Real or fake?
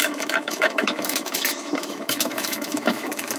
fake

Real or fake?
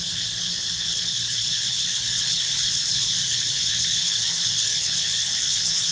fake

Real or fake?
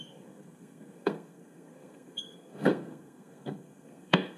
fake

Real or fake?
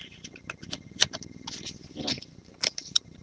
real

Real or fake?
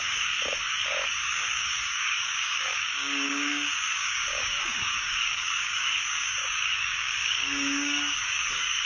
fake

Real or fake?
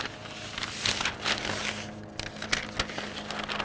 real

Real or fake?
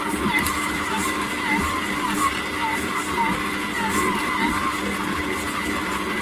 real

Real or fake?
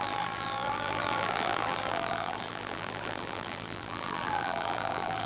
fake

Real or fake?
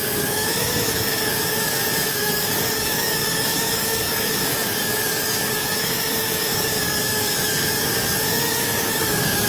fake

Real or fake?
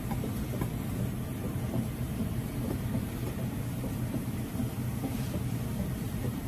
fake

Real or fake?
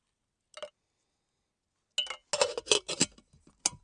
real